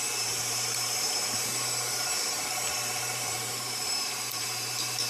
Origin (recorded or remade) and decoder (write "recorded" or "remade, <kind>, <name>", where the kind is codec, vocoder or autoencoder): remade, vocoder, BigVGAN v2